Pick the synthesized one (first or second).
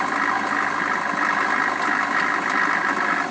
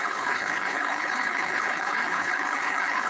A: second